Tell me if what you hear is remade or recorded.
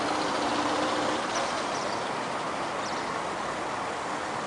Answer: recorded